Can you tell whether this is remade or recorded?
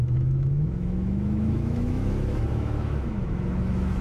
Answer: remade